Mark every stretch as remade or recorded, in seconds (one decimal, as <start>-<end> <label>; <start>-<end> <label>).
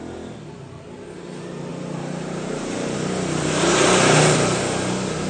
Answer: 0.0-1.7 recorded; 1.7-4.6 remade; 4.6-5.3 recorded